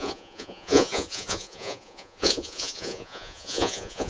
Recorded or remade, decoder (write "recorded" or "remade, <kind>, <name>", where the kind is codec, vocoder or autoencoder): remade, vocoder, Vocos